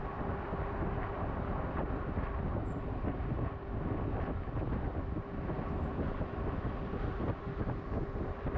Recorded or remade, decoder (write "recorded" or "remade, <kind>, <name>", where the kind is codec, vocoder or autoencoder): recorded